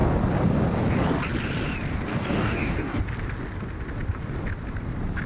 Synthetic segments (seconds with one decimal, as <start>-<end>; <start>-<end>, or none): 2.1-3.0